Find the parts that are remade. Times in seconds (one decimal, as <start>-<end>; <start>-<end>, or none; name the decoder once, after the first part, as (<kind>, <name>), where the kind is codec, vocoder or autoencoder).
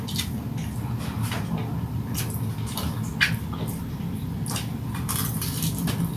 0.0-3.1 (vocoder, BigVGAN v2); 3.8-6.2